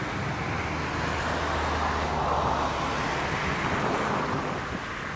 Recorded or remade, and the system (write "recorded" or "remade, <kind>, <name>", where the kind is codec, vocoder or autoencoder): recorded